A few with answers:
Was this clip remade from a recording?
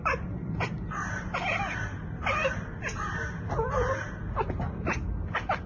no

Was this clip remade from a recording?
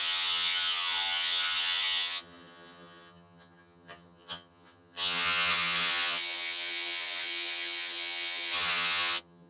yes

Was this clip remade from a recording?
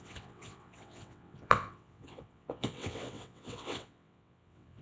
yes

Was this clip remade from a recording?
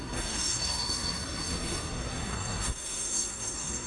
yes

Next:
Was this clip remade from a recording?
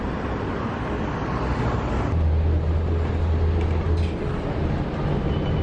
no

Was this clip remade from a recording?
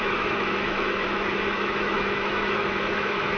yes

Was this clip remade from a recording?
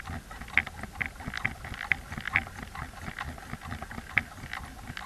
no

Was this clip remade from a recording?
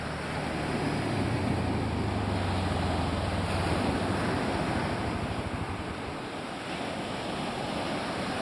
no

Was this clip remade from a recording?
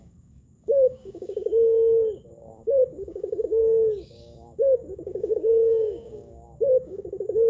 yes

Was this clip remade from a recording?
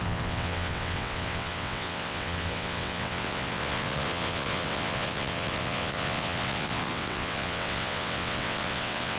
yes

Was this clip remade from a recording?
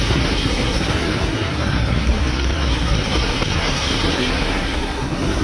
yes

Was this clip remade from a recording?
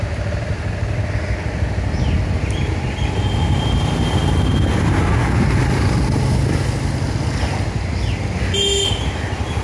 no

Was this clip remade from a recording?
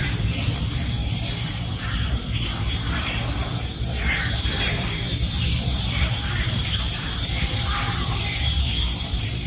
yes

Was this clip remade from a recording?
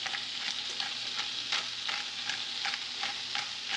no